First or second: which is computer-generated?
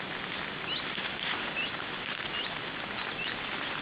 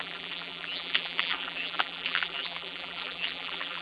second